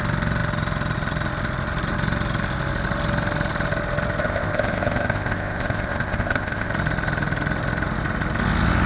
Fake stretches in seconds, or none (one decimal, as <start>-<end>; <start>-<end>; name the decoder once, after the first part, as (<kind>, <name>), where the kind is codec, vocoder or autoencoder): 4.2-6.7 (codec, ZipCodec)